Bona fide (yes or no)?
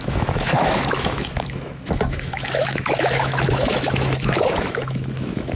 no